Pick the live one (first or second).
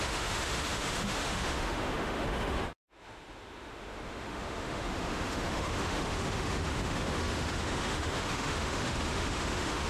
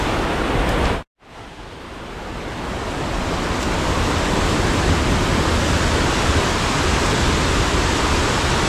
second